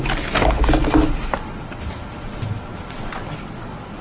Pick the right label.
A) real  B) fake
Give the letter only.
A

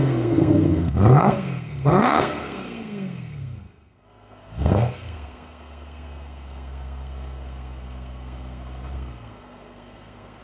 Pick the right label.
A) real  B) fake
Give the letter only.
B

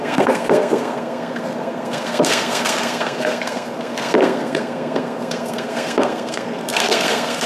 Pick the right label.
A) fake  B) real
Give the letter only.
A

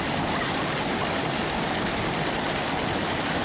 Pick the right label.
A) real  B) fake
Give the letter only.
A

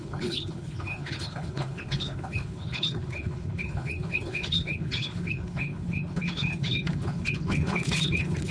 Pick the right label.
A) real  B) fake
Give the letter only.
B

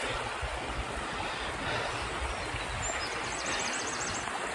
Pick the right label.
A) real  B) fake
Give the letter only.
A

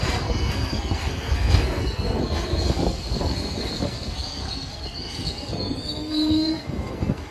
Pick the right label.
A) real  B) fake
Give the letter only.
B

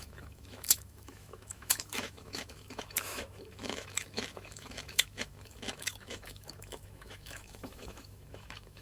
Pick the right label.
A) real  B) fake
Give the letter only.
B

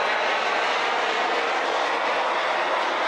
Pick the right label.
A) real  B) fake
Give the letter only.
A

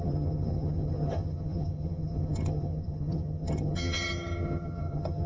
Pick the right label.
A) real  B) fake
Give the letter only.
B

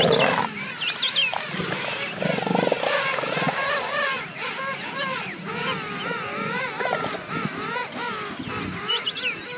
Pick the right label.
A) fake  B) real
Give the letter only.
B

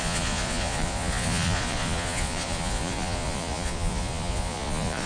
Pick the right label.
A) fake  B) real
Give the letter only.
A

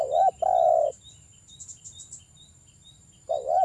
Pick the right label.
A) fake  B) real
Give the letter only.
B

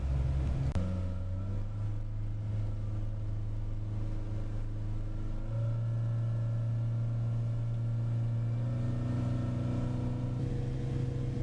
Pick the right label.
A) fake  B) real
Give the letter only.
B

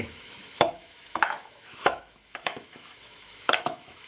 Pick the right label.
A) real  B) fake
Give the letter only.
B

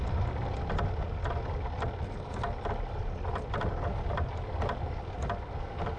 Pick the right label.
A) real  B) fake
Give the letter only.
A